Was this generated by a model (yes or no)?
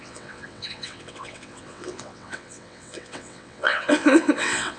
yes